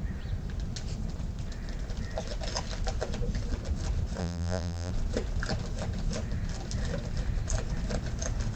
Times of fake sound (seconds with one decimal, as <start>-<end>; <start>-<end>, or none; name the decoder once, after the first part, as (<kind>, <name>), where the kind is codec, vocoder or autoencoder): 4.2-4.9 (vocoder, BigVGAN v2)